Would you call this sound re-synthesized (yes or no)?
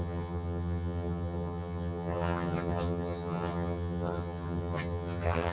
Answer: yes